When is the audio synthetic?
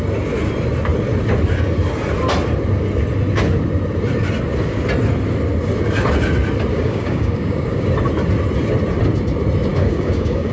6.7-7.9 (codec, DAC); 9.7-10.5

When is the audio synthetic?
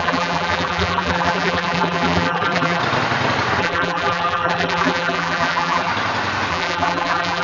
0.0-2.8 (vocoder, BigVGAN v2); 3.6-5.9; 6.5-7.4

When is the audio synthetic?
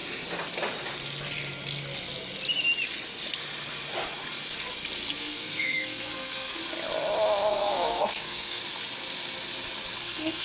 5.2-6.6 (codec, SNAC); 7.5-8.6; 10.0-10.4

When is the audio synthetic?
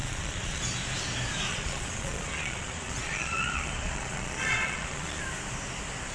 0.0-0.6 (vocoder, Vocos); 1.5-5.2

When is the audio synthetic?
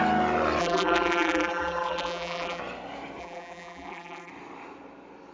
0.6-2.6 (vocoder, BigVGAN v2); 3.2-4.3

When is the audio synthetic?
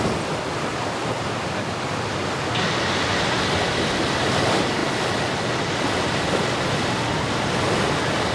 none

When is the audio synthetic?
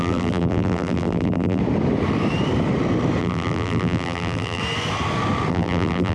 0.0-1.6 (vocoder, BigVGAN v2); 3.2-4.6; 5.5-6.1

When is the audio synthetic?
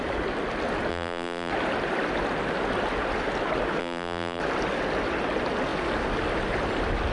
0.9-1.5 (vocoder, BigVGAN v2); 3.8-4.4